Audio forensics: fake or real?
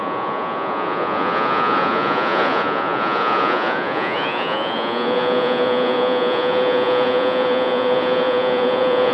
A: fake